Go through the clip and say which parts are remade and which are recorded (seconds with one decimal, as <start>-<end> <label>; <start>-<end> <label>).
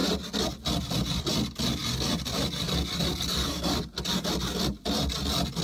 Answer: 0.0-5.6 recorded